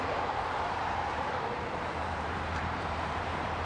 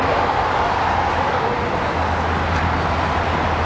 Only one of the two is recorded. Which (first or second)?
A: second